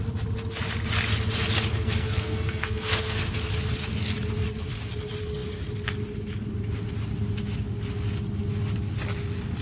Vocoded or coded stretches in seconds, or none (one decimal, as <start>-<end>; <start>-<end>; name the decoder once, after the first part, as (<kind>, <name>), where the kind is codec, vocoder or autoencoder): 1.7-3.2 (codec, SNAC)

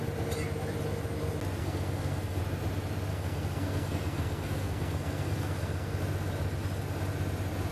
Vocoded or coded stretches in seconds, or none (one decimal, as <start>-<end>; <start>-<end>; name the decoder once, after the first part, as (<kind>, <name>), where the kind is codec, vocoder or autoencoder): 1.6-2.4 (codec, SNAC); 3.1-6.0

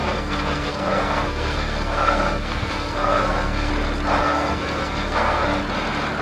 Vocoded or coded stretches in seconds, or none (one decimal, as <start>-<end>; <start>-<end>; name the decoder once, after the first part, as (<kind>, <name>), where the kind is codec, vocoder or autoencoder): 0.0-3.7 (codec, SNAC); 4.2-5.6

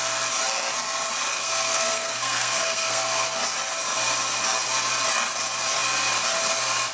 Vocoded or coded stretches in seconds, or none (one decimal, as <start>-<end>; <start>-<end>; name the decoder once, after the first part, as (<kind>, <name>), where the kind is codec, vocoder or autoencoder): 1.3-3.4 (codec, SNAC)